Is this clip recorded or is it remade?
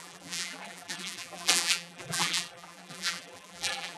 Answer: remade